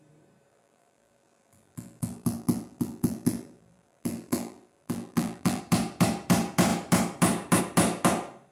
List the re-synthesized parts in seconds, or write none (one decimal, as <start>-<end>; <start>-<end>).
0.5-5.6